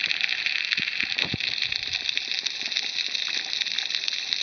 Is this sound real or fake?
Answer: real